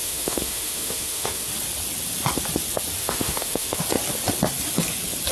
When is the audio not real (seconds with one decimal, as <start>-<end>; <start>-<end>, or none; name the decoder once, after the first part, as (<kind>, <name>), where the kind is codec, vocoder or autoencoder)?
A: 0.0-1.5 (autoencoder, DAC-VAE); 3.0-3.8